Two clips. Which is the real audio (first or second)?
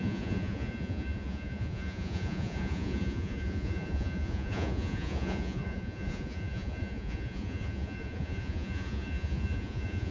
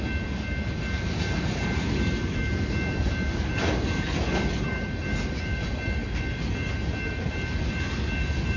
second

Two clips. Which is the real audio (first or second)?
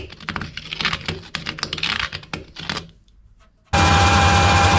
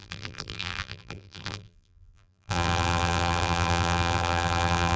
first